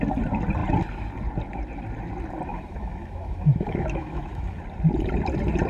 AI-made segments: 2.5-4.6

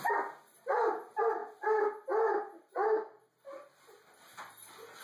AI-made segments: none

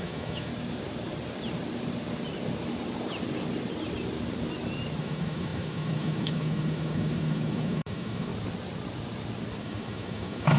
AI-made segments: 0.0-0.5; 5.0-8.3; 9.6-10.6

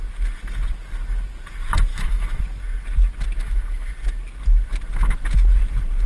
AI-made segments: 1.9-2.4; 3.4-3.9